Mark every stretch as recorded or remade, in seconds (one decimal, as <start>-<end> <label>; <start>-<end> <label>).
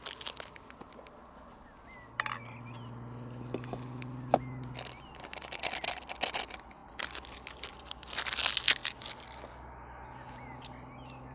0.0-11.3 recorded